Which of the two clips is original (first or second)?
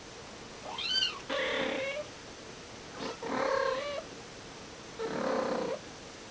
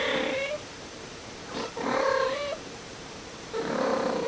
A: first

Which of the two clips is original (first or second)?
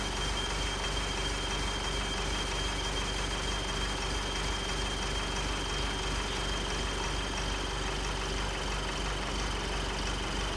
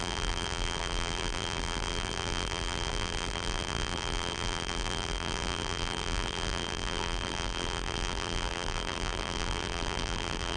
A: first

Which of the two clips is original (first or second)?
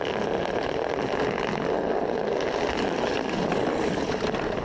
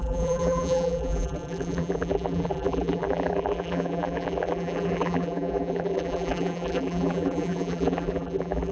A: first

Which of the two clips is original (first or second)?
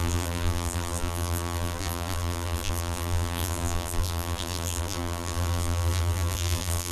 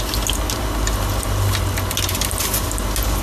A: second